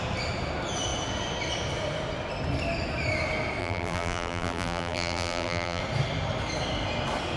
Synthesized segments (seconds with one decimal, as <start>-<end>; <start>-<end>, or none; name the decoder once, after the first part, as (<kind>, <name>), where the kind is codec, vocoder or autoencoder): 3.6-5.8 (vocoder, BigVGAN v2)